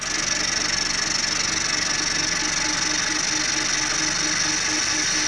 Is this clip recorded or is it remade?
recorded